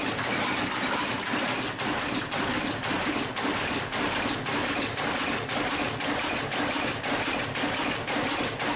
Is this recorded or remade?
recorded